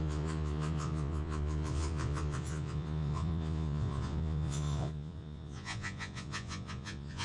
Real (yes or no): no